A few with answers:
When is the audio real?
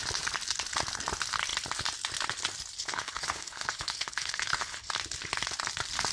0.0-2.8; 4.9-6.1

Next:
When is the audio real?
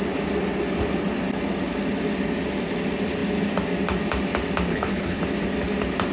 0.0-4.7; 5.2-6.1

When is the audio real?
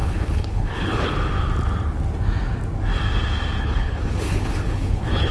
1.1-3.6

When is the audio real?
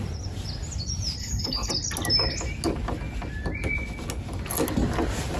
0.0-1.2; 1.7-5.4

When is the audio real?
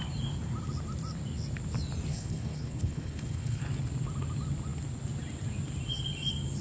0.0-2.1; 3.6-6.6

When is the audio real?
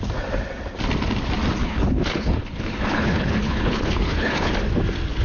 0.0-1.6; 4.5-5.2